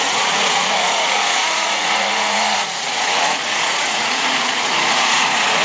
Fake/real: fake